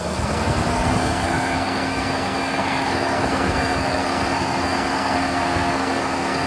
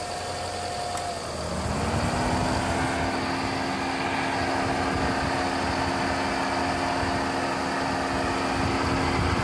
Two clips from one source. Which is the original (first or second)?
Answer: second